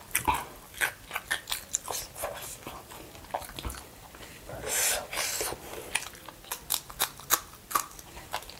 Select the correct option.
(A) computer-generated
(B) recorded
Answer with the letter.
B